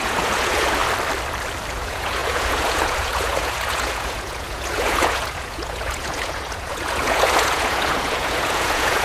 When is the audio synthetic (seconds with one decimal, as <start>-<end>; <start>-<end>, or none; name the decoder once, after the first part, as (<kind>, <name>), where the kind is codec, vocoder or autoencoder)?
0.0-0.8 (vocoder, Vocos); 1.7-9.0